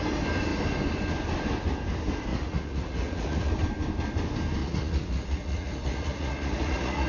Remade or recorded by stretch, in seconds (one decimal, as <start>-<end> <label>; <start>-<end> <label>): 0.0-2.3 recorded; 2.3-3.5 remade; 3.5-4.6 recorded; 4.6-7.1 remade